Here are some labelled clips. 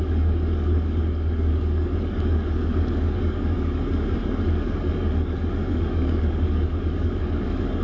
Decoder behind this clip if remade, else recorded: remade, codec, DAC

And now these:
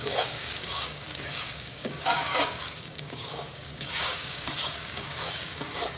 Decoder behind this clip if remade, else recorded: remade, codec, DAC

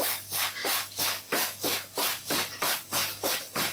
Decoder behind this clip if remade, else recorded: remade, codec, DAC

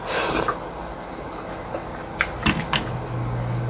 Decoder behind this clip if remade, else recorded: recorded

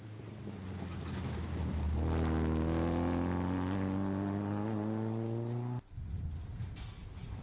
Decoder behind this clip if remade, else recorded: recorded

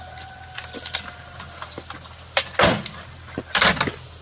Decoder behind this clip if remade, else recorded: recorded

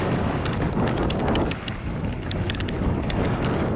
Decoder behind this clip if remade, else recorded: remade, codec, DAC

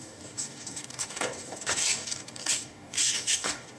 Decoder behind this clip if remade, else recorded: remade, codec, DAC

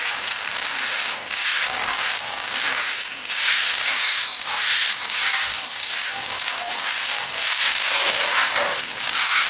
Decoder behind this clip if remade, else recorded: remade, codec, DAC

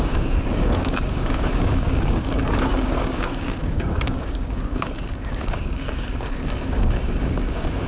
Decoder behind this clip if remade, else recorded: remade, codec, DAC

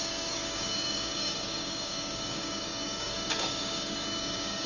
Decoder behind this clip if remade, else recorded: remade, codec, DAC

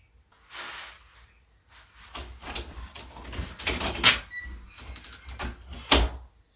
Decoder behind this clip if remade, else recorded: recorded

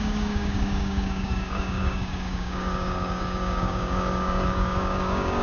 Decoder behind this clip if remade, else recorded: remade, codec, DAC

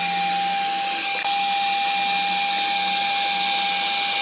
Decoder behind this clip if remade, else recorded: recorded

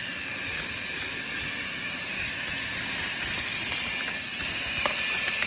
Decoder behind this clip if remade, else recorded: recorded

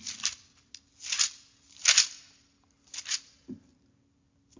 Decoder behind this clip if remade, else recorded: recorded